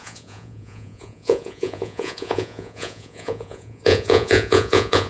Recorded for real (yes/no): no